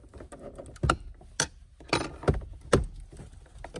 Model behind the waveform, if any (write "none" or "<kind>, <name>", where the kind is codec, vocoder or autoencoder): none